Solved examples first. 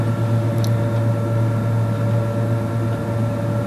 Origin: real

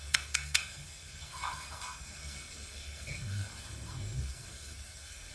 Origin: fake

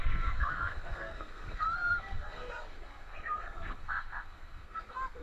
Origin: fake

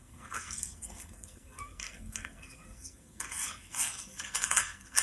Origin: fake